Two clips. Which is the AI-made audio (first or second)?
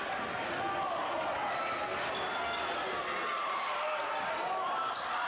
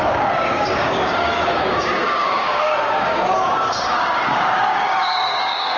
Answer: second